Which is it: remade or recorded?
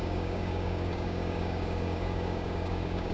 remade